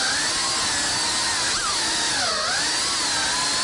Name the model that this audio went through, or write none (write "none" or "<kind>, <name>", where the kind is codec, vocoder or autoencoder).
none